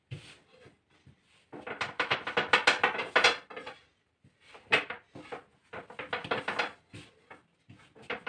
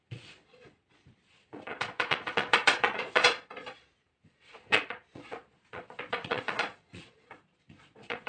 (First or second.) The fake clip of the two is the second